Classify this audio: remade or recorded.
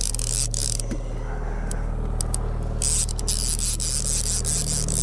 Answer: recorded